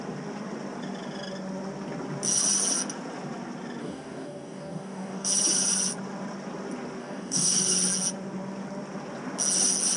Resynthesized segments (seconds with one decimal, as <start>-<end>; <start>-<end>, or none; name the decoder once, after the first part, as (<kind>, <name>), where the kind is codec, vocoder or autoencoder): 3.8-5.3 (codec, DAC); 7.0-7.6